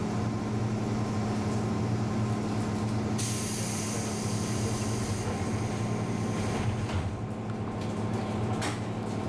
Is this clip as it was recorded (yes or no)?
yes